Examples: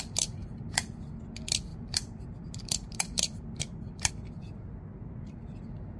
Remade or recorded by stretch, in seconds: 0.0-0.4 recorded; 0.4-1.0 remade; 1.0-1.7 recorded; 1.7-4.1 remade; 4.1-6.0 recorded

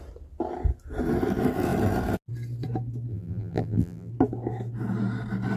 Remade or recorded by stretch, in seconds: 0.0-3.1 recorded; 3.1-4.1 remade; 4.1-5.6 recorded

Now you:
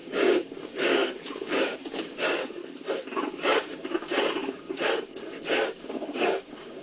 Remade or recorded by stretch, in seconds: 0.0-2.6 remade; 2.6-3.3 recorded; 3.3-6.8 remade

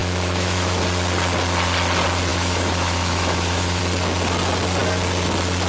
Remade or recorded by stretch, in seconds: 0.0-0.8 remade; 0.8-2.3 recorded; 2.3-3.8 remade; 3.8-5.7 recorded

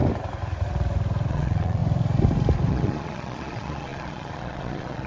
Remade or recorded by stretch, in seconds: 0.0-1.3 recorded; 1.3-1.8 remade; 1.8-2.7 recorded; 2.7-5.1 remade

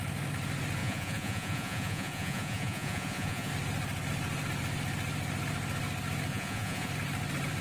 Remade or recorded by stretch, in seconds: 0.0-0.8 recorded; 0.8-3.5 remade; 3.5-6.3 recorded; 6.3-6.9 remade; 6.9-7.6 recorded

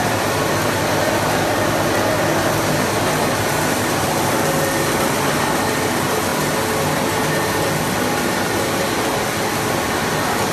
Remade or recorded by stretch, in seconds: 0.0-10.5 recorded

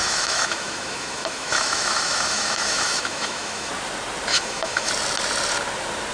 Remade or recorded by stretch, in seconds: 0.0-3.7 remade; 3.7-4.3 recorded; 4.3-4.9 remade; 4.9-6.1 recorded